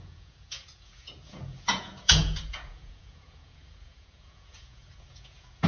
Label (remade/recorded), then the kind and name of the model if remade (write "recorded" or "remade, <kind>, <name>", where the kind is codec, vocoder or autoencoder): remade, vocoder, Vocos